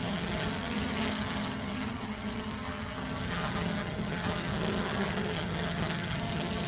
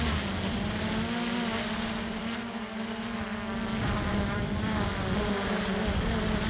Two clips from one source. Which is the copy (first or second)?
first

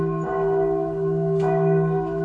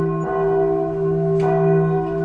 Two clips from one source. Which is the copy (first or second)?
first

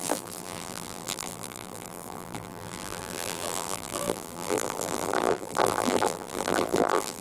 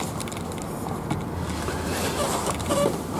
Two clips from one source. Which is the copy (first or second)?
first